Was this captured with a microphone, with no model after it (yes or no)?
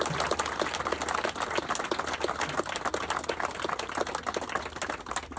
yes